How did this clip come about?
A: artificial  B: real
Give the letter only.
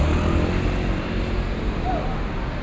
B